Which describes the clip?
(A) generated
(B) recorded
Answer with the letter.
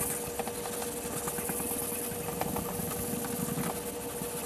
B